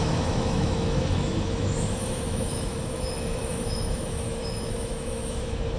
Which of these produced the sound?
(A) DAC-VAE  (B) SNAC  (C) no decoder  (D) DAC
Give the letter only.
A